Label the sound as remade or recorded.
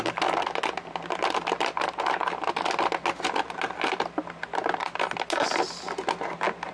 recorded